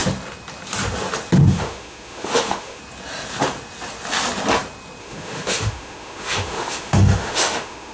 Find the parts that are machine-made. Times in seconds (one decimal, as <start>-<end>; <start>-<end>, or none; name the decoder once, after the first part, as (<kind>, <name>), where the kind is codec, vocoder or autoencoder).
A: 1.5-2.8 (autoencoder, DAC-VAE); 5.0-7.9